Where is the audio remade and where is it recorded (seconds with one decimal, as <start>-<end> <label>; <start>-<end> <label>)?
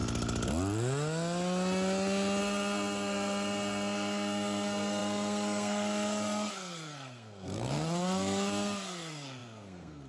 0.0-2.4 recorded; 2.4-10.1 remade